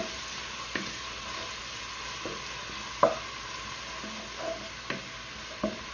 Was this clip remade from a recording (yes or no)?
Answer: no